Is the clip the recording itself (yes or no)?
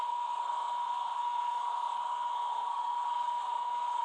no